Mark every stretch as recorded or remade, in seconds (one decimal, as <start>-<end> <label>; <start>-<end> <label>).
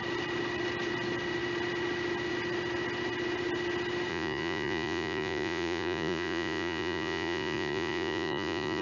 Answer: 0.0-4.1 recorded; 4.1-8.8 remade